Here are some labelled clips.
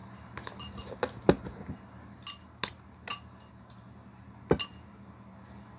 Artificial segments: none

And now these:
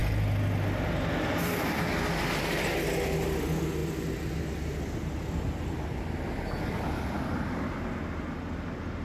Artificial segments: none

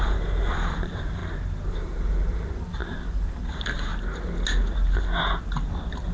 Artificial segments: 0.0-1.2 (vocoder, BigVGAN v2); 1.7-3.9